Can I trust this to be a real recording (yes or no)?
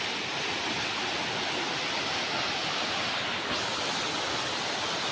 yes